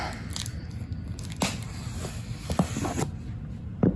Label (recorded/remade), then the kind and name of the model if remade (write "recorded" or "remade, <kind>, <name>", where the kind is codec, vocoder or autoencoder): recorded